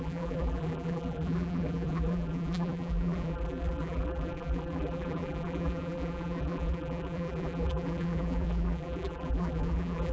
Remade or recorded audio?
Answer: remade